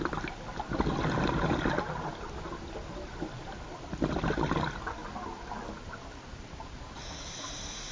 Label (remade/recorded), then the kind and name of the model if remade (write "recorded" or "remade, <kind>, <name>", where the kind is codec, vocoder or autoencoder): recorded